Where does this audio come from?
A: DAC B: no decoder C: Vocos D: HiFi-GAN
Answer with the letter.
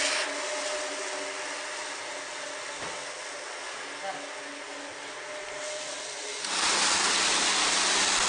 B